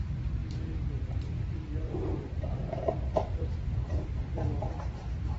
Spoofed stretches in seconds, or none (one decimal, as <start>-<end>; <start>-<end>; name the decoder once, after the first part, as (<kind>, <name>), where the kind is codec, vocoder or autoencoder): 0.0-0.4 (vocoder, BigVGAN v2); 1.5-5.4